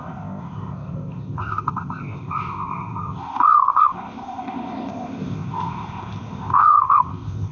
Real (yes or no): no